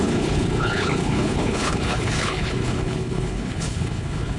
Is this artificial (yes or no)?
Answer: yes